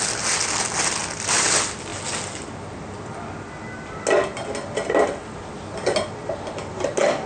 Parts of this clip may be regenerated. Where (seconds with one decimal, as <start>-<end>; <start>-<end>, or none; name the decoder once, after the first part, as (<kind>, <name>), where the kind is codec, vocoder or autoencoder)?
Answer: none